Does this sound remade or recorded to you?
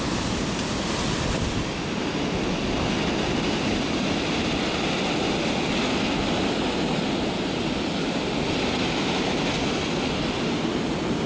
recorded